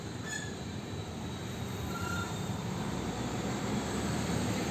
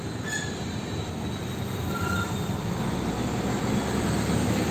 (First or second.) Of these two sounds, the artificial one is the first